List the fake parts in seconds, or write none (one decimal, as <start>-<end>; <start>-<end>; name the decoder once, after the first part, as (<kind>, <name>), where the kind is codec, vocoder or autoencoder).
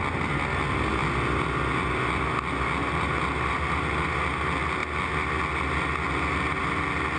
2.8-4.1 (vocoder, BigVGAN v2)